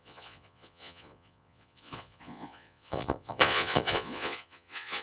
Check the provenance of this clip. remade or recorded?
remade